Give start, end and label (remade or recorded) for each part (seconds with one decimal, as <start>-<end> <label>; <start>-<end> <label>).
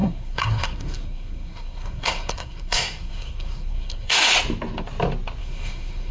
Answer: 0.0-4.2 remade; 4.2-5.4 recorded; 5.4-6.1 remade